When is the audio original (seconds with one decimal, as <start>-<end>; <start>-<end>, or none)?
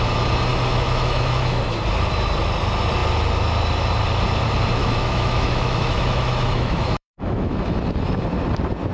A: 0.0-0.5; 1.8-4.8; 7.8-8.9